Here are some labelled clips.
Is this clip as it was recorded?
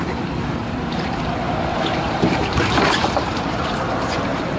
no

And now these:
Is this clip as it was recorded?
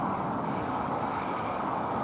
no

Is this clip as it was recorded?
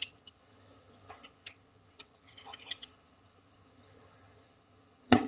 no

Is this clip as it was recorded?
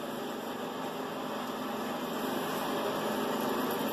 yes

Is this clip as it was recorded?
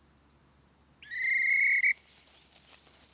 yes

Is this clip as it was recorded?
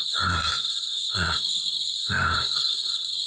no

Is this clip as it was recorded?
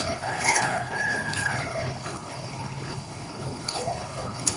no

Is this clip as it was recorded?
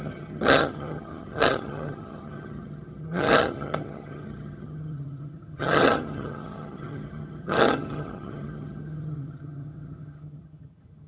no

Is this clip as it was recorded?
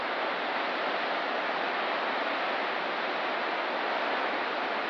yes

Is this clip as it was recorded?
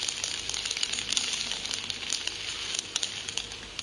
yes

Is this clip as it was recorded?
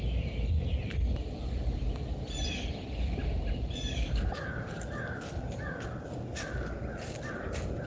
yes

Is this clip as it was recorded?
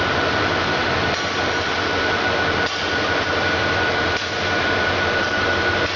yes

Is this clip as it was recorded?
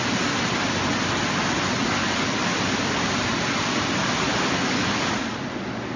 yes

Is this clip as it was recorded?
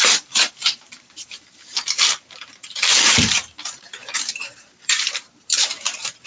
no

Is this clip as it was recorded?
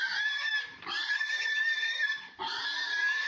no